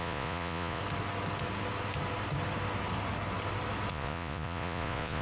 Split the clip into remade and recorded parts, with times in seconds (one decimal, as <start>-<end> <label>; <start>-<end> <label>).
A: 0.0-0.8 remade; 0.8-3.9 recorded; 3.9-5.2 remade